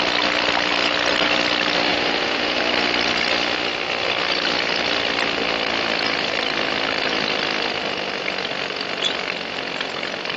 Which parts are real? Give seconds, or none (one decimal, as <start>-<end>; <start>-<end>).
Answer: 0.0-1.9; 2.6-10.4